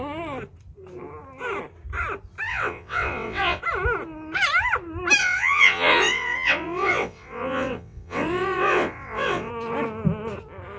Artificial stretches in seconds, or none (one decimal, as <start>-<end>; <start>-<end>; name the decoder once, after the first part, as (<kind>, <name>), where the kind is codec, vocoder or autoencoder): 2.5-3.6 (vocoder, WaveNeXt); 5.2-9.5